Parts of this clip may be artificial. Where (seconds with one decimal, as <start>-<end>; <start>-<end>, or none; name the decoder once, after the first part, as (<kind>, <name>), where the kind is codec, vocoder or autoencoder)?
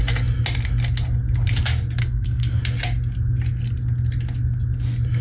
2.0-2.6 (codec, SNAC)